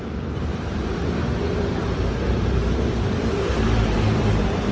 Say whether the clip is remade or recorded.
remade